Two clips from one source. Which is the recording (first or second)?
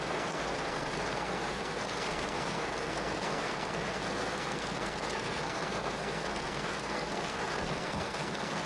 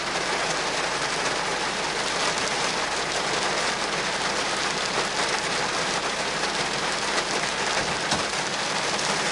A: second